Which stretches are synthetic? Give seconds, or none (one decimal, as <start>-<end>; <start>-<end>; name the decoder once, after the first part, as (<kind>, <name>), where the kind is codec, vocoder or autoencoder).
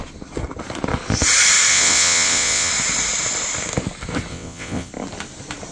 1.7-2.7 (vocoder, WaveNeXt); 4.3-4.9